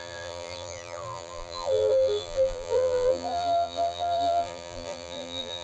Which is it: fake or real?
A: fake